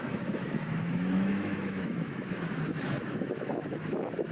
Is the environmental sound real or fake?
fake